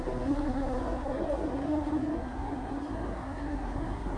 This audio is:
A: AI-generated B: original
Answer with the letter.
A